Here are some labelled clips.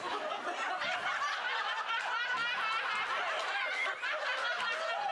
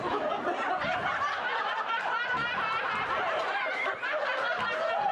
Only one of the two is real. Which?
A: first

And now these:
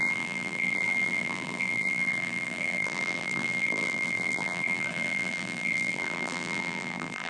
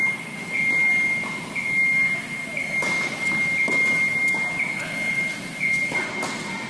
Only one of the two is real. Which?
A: second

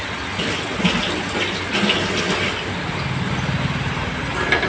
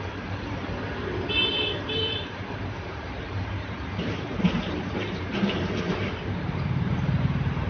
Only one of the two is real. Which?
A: first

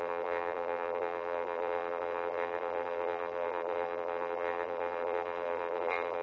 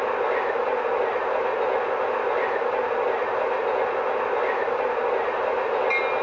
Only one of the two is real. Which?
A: second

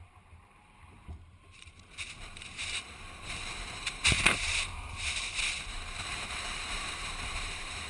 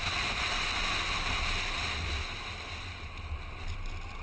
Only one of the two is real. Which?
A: second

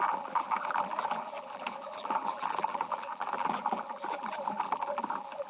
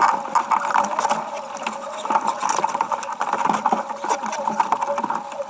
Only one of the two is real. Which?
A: second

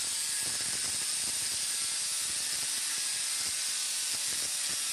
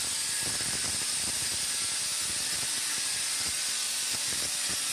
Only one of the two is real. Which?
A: first